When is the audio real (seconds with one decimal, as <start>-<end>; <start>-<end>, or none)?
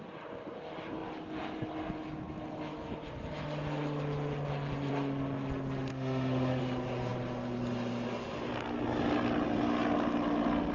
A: 0.0-5.9; 6.6-10.7